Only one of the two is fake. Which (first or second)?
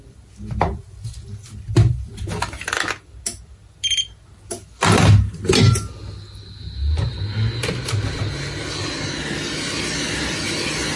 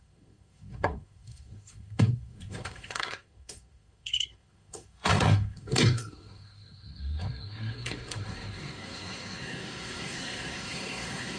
second